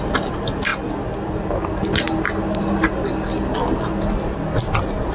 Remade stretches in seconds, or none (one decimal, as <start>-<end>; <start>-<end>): none